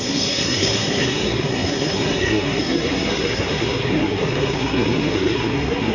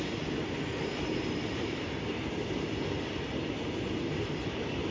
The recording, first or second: second